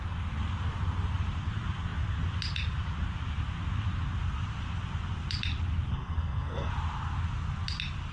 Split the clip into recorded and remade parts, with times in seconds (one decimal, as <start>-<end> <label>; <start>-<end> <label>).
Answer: 0.0-5.9 recorded; 5.9-6.7 remade; 6.7-8.1 recorded

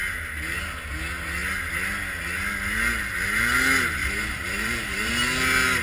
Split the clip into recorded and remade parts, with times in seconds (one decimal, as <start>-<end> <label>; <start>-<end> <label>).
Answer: 0.0-4.0 recorded; 4.0-5.1 remade; 5.1-5.8 recorded